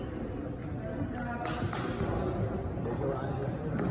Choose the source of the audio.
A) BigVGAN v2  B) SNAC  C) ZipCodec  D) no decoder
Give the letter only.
D